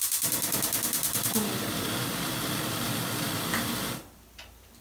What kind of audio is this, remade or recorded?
remade